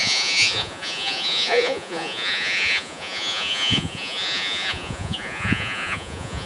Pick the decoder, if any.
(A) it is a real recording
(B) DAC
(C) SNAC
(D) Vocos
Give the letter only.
D